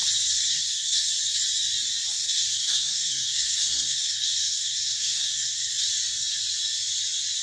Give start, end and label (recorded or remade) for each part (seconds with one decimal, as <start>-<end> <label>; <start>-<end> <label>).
0.0-0.4 recorded; 0.4-1.1 remade; 1.1-2.1 recorded; 2.1-5.7 remade; 5.7-7.4 recorded